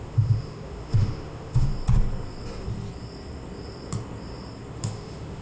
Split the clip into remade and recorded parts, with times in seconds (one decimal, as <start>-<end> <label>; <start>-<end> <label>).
0.0-1.7 remade; 1.7-4.7 recorded; 4.7-5.4 remade